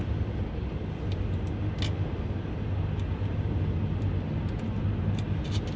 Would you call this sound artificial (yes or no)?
no